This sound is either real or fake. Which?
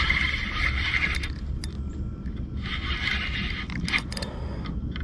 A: real